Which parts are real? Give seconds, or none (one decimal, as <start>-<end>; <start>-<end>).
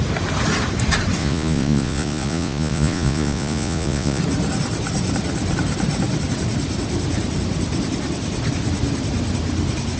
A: 0.0-1.2; 4.2-10.0